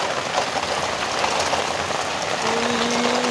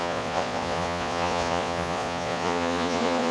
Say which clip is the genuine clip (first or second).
first